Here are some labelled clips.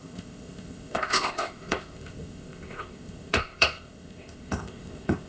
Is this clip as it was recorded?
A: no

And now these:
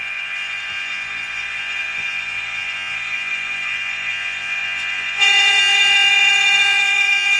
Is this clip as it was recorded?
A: no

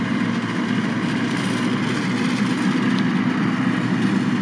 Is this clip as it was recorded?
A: yes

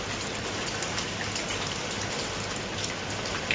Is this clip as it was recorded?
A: yes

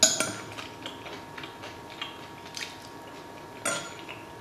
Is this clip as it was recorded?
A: yes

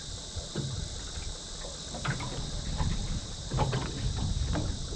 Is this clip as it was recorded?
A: yes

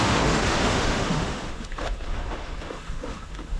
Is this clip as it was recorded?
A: no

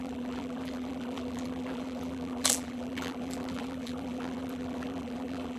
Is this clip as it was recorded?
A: no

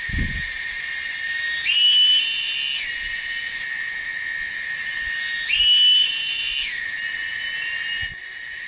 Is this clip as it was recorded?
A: yes